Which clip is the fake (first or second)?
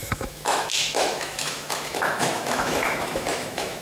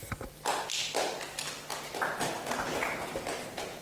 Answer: first